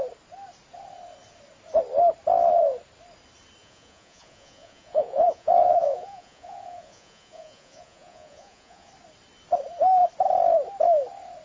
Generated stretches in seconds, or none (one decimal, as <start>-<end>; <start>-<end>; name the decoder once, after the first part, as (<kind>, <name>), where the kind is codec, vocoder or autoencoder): 3.6-8.9 (vocoder, Vocos)